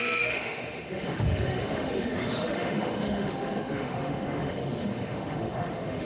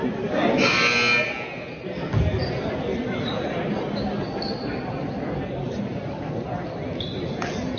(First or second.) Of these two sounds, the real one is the second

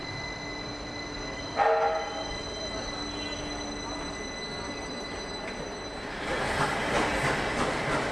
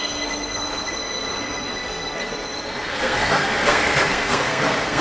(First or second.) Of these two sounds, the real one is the first